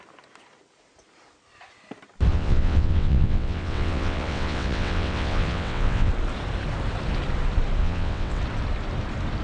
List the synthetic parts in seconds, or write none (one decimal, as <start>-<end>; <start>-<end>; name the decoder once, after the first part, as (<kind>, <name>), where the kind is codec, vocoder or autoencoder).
2.3-6.1 (vocoder, WaveNeXt); 7.8-8.4